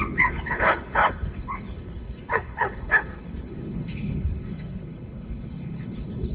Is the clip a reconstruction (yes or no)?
yes